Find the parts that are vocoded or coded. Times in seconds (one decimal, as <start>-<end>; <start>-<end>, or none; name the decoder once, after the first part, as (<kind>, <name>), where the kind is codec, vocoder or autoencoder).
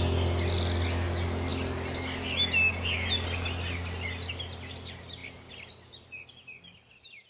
none